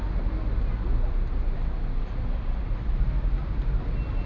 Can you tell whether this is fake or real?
real